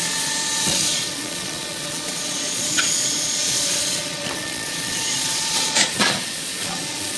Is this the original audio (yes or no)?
no